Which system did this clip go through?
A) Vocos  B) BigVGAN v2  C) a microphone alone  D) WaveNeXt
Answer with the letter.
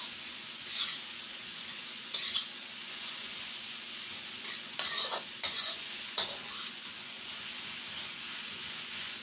A